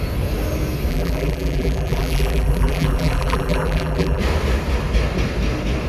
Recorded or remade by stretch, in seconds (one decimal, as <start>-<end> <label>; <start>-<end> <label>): 0.0-0.9 recorded; 0.9-4.2 remade; 4.2-5.9 recorded